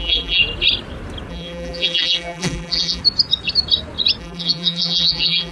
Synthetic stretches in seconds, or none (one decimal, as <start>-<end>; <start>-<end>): 0.0-0.4; 1.3-3.0; 4.2-5.5